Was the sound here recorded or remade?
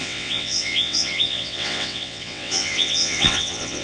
remade